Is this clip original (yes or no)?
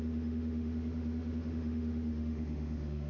no